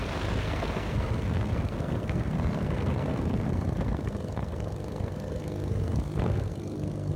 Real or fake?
fake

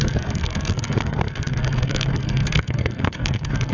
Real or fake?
fake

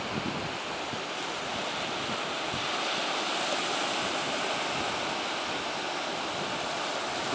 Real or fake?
real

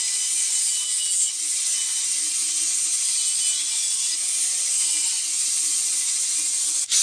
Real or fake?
real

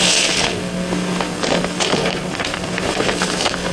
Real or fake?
fake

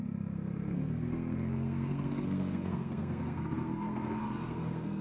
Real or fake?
fake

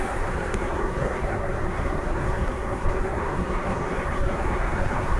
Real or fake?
fake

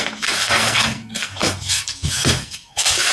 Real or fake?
fake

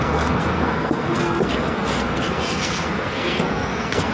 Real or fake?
fake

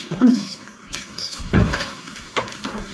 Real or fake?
fake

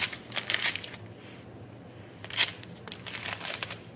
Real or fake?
real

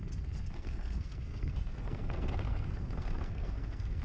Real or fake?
fake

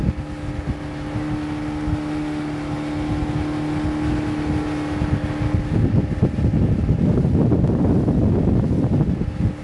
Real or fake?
real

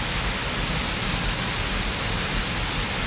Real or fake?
real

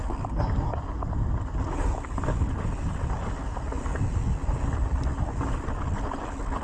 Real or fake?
real